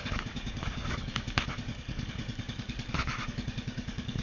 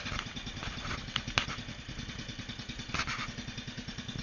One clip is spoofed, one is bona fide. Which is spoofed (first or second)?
first